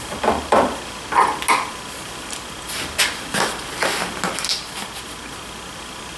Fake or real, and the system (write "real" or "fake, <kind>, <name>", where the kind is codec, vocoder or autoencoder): real